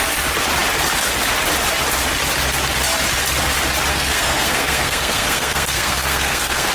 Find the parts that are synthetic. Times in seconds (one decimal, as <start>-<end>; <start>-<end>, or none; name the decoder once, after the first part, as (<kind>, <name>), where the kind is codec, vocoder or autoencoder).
3.9-6.7 (codec, SNAC)